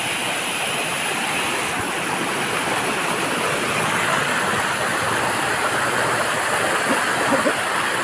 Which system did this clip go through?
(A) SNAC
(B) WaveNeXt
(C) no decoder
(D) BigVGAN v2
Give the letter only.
C